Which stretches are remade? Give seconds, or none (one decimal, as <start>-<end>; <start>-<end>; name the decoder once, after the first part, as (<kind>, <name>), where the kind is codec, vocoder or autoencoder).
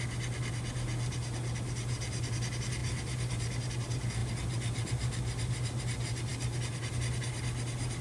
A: 2.8-3.4 (vocoder, BigVGAN v2)